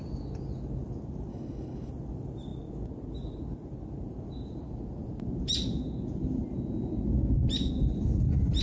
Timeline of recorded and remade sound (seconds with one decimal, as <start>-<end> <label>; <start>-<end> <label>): 0.0-1.3 recorded; 1.3-1.9 remade; 1.9-8.6 recorded